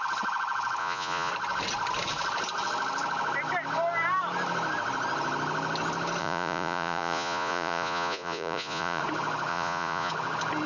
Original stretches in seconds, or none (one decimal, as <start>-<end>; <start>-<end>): 0.0-0.8; 1.3-6.2; 9.0-9.5; 10.1-10.7